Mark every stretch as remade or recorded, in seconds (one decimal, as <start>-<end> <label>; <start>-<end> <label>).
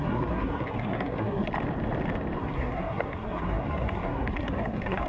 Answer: 0.0-1.5 remade; 1.5-2.4 recorded; 2.4-5.1 remade